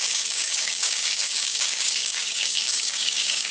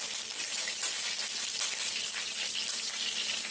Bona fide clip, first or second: second